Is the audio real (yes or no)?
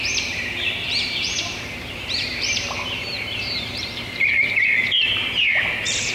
no